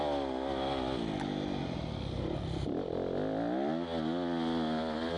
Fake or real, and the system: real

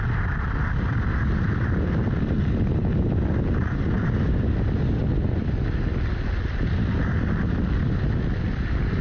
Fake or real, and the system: real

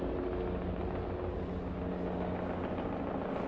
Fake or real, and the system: real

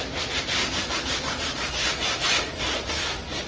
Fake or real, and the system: real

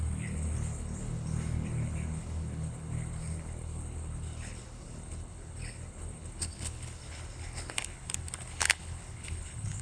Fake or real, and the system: fake, codec, HILCodec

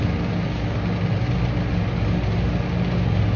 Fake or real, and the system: real